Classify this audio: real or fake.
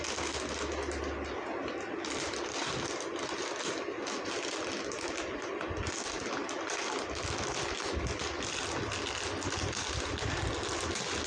real